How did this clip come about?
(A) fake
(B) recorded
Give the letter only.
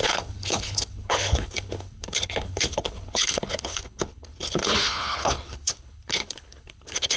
A